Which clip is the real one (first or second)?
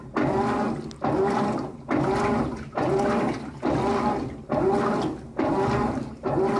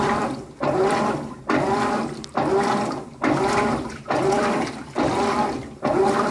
first